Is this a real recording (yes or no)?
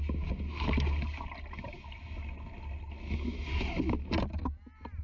yes